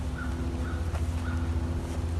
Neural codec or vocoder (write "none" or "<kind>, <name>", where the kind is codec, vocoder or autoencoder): none